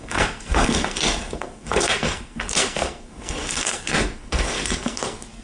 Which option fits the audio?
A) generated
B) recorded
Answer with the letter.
A